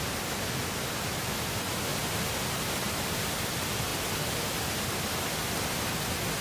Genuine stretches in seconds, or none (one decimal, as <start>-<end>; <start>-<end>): 0.0-1.9; 3.3-6.4